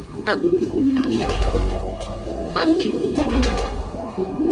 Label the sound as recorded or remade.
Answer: remade